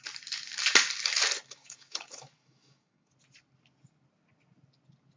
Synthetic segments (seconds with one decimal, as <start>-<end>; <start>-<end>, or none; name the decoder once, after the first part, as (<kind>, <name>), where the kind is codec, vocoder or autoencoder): 1.6-3.1 (codec, DAC)